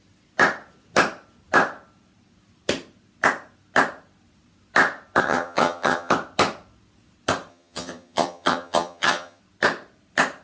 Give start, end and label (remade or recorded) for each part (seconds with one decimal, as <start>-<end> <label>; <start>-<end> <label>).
0.0-5.2 recorded; 5.2-6.1 remade; 6.1-7.5 recorded; 7.5-9.4 remade; 9.4-10.4 recorded